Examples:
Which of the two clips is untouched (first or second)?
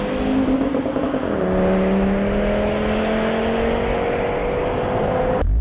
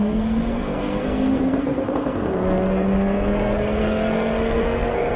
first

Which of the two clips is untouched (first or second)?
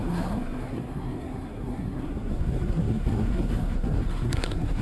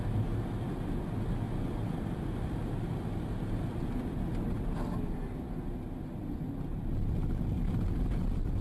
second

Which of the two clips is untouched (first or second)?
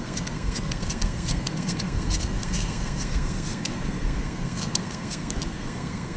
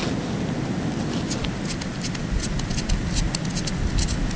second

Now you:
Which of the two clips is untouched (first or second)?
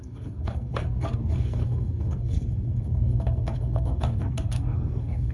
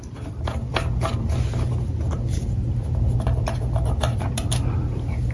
second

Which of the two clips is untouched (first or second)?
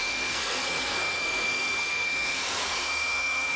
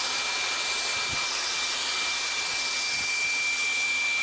second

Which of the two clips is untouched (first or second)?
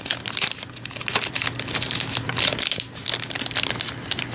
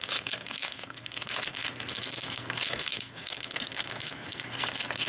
first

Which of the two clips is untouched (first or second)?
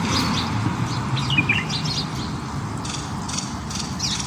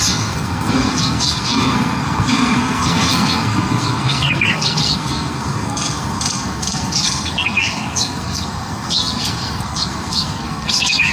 first